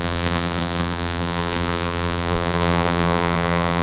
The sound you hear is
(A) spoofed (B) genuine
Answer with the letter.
A